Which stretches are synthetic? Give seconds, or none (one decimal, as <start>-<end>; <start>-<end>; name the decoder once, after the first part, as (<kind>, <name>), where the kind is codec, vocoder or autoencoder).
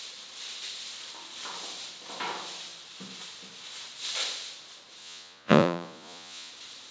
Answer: 5.0-6.5 (vocoder, Vocos)